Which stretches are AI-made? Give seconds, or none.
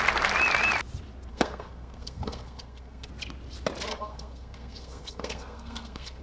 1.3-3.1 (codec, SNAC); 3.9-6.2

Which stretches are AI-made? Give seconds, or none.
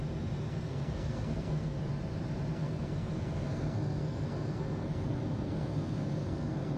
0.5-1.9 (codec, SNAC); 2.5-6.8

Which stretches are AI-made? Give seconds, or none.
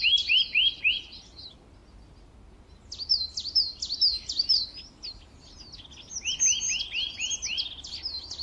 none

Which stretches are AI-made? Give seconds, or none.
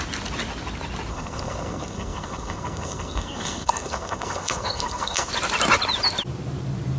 1.1-5.3 (codec, SNAC)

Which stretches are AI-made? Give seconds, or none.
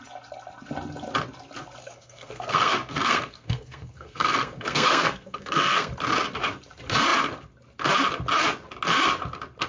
1.8-5.9 (codec, SNAC)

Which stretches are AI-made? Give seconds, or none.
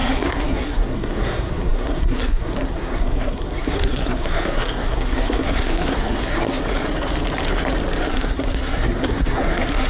0.0-6.6 (codec, SNAC); 8.1-9.9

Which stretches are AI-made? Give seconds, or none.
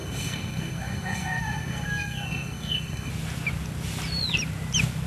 0.0-3.1 (codec, SNAC)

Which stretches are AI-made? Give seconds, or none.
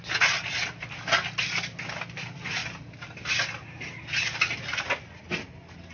none